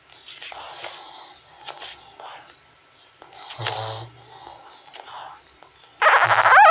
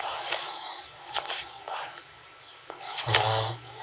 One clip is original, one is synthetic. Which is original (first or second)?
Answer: first